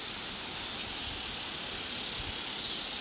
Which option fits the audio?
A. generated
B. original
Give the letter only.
B